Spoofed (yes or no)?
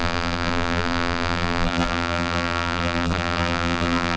yes